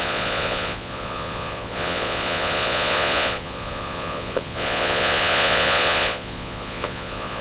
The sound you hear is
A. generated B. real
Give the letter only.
A